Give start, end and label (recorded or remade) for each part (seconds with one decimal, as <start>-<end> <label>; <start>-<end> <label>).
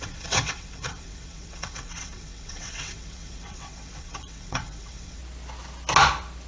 0.0-5.2 remade; 5.2-6.5 recorded